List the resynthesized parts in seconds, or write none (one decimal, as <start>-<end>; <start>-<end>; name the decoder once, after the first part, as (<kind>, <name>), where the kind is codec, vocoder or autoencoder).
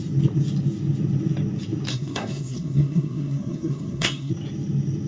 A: 1.9-4.3 (codec, SNAC)